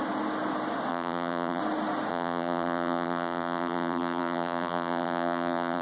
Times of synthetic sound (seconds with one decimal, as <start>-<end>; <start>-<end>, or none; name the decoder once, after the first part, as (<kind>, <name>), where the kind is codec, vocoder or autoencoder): 0.9-1.6 (vocoder, BigVGAN v2); 2.1-5.8